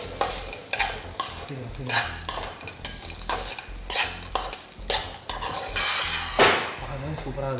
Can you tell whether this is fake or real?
real